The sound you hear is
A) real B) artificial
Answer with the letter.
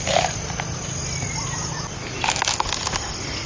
A